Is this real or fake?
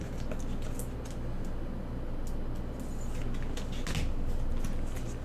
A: real